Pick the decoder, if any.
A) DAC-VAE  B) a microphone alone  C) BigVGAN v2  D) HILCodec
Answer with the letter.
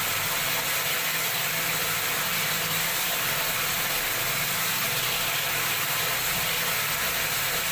B